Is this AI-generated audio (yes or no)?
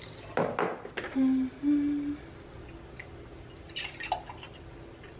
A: no